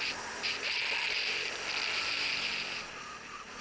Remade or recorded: recorded